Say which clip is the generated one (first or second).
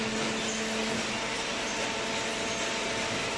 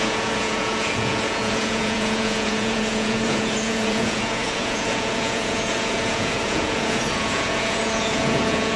second